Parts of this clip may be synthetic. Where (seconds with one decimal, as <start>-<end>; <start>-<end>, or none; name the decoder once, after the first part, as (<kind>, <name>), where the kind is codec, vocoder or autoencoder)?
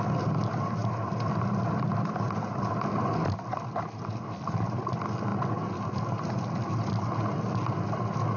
none